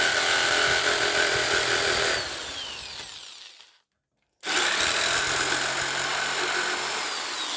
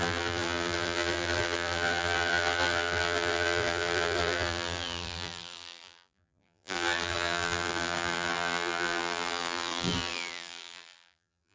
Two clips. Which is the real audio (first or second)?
first